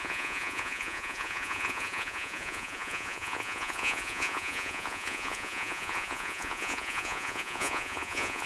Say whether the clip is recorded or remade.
remade